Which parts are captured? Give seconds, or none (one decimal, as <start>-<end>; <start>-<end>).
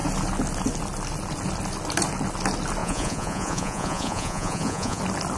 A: 0.0-2.8; 5.0-5.4